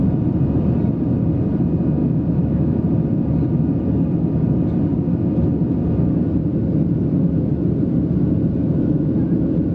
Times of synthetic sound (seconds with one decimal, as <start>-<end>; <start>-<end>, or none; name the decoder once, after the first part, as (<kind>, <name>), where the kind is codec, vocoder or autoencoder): 2.0-2.8 (autoencoder, DAC-VAE)